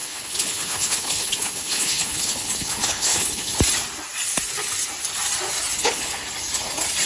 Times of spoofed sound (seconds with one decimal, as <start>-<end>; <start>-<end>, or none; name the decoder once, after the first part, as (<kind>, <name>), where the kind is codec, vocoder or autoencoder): 0.0-3.5 (codec, HILCodec); 5.8-6.2